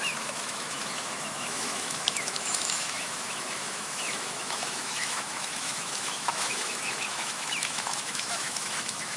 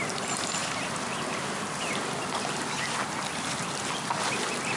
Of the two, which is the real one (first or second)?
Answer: second